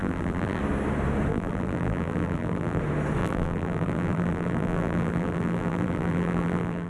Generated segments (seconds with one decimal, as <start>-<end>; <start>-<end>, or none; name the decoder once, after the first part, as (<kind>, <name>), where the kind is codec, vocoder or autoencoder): 0.0-0.6 (vocoder, BigVGAN v2); 1.3-2.8; 3.2-6.9